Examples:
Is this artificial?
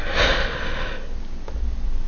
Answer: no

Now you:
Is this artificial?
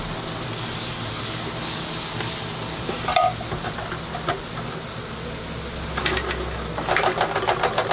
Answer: no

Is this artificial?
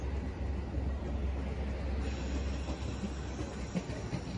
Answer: no